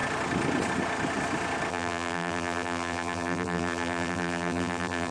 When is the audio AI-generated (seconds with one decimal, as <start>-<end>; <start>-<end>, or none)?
1.7-5.1